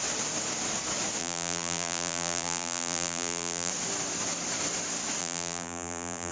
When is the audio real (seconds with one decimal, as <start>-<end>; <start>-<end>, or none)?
0.0-1.2; 3.7-5.2